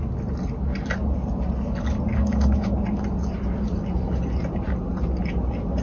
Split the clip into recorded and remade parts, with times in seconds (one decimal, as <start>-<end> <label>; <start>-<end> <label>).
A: 0.0-2.1 recorded; 2.1-2.7 remade; 2.7-5.8 recorded